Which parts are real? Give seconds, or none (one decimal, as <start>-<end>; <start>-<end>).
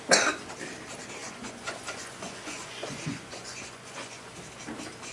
0.0-1.2; 4.3-5.1